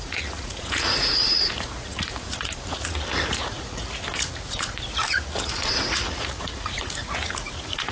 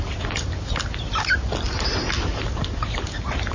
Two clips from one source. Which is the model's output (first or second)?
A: first